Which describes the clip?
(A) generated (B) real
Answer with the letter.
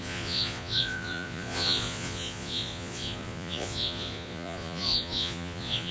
A